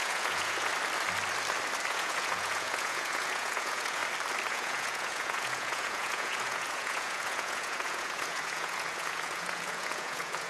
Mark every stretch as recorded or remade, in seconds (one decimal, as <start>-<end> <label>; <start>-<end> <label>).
0.0-0.7 remade; 0.7-1.9 recorded; 1.9-4.0 remade; 4.0-4.5 recorded; 4.5-10.5 remade